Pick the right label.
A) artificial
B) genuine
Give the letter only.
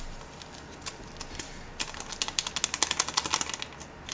B